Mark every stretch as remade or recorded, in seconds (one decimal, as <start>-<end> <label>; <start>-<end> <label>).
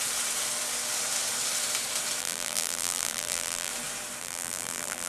0.0-2.2 recorded; 2.2-3.7 remade; 3.7-4.2 recorded; 4.2-5.1 remade